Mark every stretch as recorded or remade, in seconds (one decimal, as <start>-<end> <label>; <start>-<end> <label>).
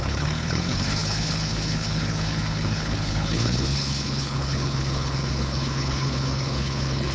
0.0-7.1 remade